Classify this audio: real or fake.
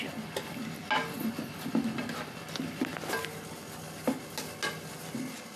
real